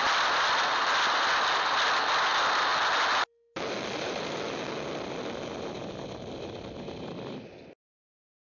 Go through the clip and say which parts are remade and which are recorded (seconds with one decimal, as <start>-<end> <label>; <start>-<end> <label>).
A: 0.0-8.4 recorded